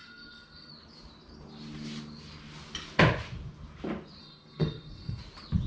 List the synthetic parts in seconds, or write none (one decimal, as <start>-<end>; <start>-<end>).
0.0-0.7; 4.2-5.2